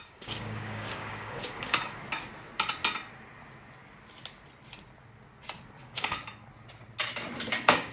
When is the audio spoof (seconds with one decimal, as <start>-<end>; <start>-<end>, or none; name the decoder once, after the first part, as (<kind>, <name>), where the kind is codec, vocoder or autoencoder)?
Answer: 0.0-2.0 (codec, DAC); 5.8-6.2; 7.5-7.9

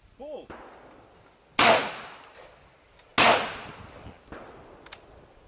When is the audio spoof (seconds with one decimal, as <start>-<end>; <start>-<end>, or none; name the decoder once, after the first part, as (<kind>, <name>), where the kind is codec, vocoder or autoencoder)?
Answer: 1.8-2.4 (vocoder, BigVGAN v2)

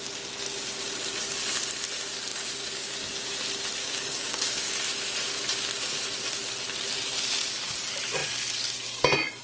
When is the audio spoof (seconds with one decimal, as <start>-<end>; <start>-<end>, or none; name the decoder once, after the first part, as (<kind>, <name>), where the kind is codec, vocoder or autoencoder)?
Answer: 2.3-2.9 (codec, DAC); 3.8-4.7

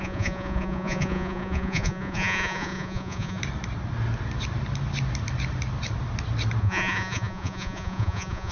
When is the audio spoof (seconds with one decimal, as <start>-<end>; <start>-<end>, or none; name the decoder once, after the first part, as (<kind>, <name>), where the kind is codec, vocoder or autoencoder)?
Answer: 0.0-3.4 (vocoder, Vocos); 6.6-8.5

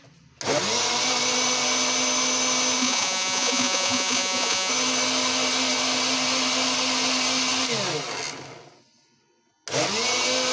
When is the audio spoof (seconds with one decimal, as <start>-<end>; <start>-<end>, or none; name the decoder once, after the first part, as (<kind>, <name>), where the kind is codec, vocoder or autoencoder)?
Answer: 2.8-4.7 (vocoder, Vocos)